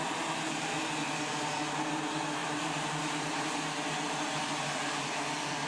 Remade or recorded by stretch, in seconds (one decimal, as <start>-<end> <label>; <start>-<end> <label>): 0.0-2.4 recorded; 2.4-2.9 remade; 2.9-5.7 recorded